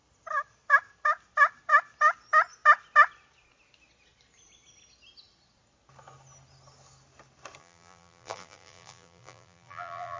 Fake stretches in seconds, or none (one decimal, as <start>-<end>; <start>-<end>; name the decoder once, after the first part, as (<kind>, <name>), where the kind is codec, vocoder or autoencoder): 7.6-10.2 (vocoder, BigVGAN v2)